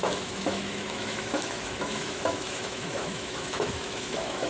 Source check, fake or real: fake